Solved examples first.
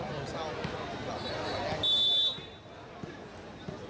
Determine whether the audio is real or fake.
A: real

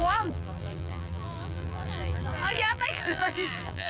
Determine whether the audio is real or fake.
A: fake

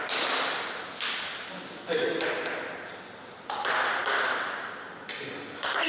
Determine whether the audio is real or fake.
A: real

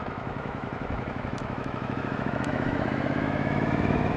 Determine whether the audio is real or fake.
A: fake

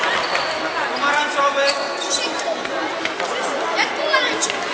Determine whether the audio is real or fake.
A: real